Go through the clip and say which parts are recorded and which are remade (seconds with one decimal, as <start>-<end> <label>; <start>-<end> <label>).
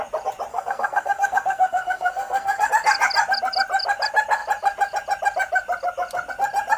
0.0-0.5 recorded; 0.5-2.7 remade; 2.7-6.8 recorded